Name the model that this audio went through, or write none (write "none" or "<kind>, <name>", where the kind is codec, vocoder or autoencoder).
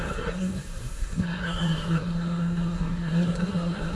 codec, SNAC